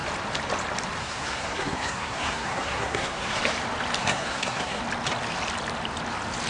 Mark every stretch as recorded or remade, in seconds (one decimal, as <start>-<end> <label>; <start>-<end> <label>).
0.0-1.0 recorded; 1.0-3.4 remade; 3.4-4.0 recorded; 4.0-4.8 remade; 4.8-6.5 recorded